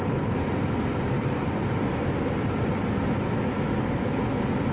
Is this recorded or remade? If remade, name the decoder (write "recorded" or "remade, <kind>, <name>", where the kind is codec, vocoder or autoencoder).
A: recorded